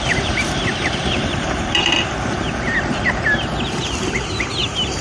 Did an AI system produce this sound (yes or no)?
yes